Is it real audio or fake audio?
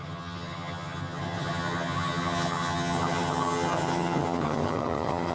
fake